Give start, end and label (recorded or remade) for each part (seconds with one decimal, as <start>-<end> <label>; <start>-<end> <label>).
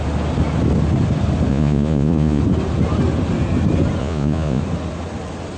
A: 0.0-1.5 recorded; 1.5-2.4 remade; 2.4-4.0 recorded; 4.0-4.6 remade; 4.6-5.6 recorded